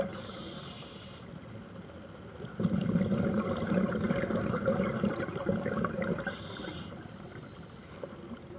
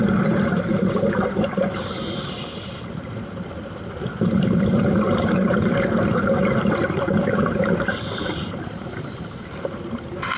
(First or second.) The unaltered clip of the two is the first